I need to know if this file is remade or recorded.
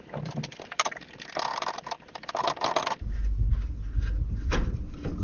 recorded